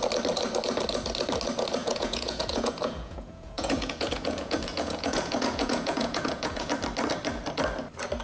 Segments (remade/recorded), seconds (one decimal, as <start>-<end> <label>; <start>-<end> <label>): 0.0-1.8 recorded; 1.8-6.7 remade; 6.7-8.2 recorded